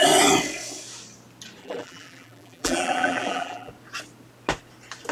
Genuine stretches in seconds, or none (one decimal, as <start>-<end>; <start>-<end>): 0.0-1.6; 3.7-5.1